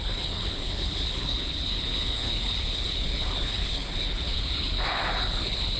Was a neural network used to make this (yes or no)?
yes